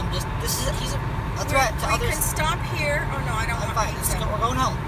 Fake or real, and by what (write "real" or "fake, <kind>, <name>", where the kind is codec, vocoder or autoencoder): real